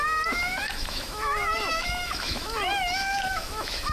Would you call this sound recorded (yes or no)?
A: no